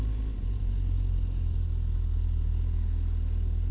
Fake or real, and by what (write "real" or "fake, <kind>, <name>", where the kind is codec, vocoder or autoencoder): real